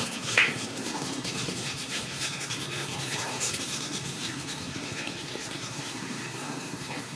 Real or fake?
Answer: fake